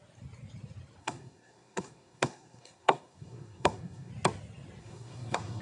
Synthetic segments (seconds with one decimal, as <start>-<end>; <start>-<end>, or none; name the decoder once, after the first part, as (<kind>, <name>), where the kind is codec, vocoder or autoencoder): 1.0-4.1 (codec, SNAC); 4.8-5.6